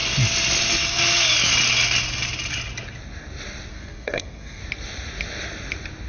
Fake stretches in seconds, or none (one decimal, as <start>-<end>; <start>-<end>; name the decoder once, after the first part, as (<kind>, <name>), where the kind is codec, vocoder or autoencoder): 3.7-4.6 (codec, SNAC)